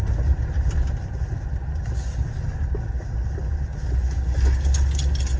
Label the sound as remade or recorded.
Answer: recorded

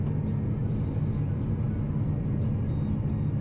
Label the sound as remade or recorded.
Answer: recorded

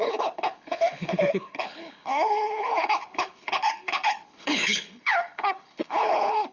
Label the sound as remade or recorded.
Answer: remade